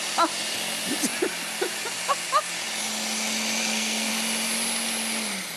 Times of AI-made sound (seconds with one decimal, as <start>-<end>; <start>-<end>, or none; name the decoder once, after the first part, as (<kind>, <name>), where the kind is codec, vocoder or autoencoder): 3.6-4.1 (codec, SNAC)